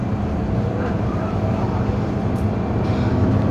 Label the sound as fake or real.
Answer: real